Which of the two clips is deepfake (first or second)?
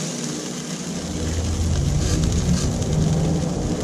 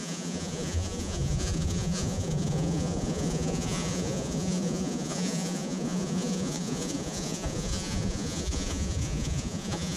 second